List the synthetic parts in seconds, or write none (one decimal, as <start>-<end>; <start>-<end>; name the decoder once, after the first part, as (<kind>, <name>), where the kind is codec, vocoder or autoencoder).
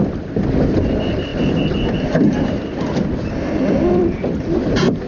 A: 0.0-1.3 (vocoder, BigVGAN v2); 2.6-5.1